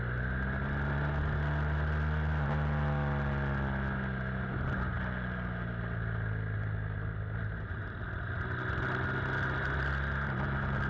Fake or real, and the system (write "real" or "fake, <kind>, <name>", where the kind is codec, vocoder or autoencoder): real